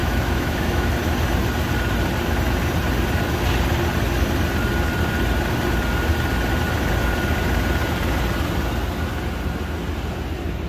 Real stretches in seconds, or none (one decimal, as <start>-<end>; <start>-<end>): 0.9-10.7